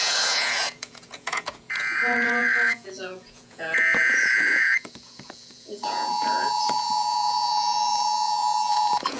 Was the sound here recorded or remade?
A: remade